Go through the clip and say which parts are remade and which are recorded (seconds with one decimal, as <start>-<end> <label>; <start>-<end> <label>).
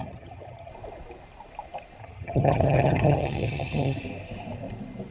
0.0-0.7 remade; 0.7-2.0 recorded; 2.0-4.0 remade; 4.0-5.1 recorded